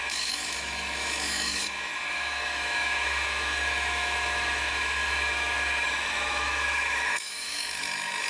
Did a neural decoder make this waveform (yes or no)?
yes